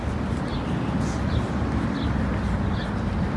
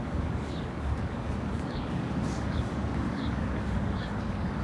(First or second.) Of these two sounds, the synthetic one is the second